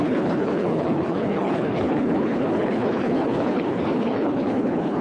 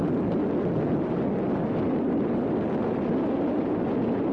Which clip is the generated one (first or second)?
first